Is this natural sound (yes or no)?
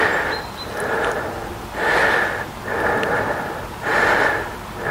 yes